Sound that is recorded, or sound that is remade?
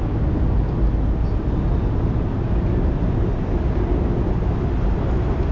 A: recorded